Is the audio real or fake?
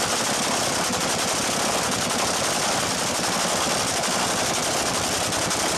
real